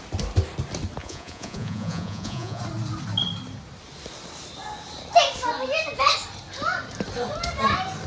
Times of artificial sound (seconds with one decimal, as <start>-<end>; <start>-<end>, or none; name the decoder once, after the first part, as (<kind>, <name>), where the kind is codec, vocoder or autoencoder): 1.0-2.6 (vocoder, Vocos)